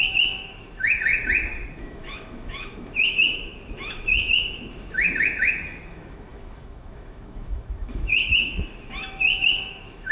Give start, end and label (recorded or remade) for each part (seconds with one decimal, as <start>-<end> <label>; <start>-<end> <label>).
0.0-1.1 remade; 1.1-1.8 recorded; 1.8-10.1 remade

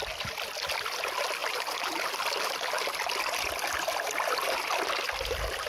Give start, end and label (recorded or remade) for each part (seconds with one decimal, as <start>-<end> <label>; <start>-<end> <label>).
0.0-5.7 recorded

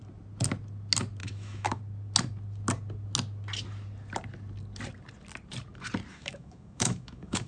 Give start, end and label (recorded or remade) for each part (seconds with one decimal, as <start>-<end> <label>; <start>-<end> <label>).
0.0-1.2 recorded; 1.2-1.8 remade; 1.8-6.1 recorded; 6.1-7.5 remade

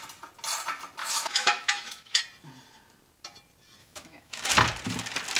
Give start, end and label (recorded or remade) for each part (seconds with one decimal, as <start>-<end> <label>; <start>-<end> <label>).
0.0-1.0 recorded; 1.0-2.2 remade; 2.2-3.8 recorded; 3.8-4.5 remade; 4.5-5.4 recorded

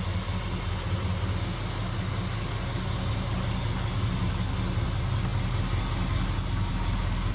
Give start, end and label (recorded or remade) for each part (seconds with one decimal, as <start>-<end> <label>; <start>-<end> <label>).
0.0-7.3 recorded